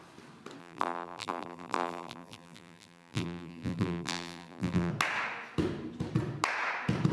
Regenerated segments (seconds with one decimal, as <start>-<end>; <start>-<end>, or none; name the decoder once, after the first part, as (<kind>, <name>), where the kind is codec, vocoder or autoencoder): 0.6-4.9 (vocoder, BigVGAN v2)